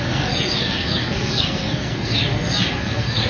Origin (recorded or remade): remade